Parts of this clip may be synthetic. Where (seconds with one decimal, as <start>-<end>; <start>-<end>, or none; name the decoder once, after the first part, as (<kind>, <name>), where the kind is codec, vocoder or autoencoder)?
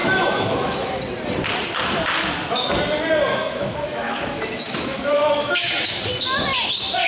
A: 0.0-0.9 (autoencoder, DAC-VAE); 3.3-6.0